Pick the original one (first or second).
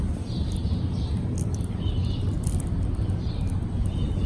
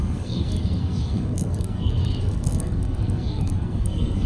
first